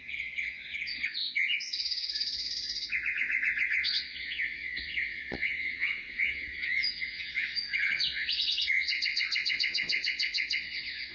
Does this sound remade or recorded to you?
remade